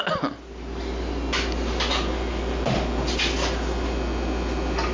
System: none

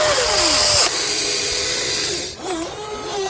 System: none